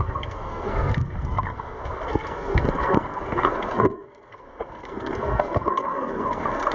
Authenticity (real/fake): fake